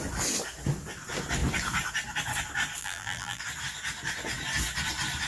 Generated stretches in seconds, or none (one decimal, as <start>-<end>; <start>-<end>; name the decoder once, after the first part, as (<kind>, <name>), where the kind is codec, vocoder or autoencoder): 2.8-3.4 (vocoder, BigVGAN v2)